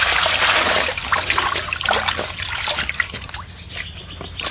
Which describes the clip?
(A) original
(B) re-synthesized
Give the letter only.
A